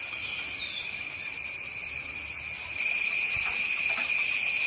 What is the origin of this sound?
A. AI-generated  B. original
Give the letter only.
B